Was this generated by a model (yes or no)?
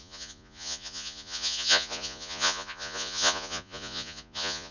yes